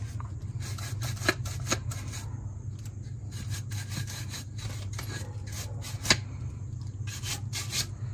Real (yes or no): yes